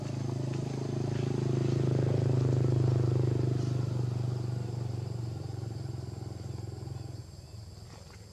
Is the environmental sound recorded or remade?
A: recorded